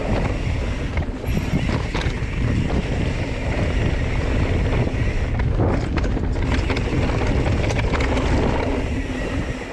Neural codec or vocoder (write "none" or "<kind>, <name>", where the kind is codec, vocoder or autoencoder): none